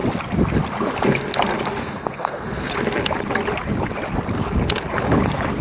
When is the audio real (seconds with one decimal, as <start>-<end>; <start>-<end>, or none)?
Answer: 0.0-1.8; 2.7-5.6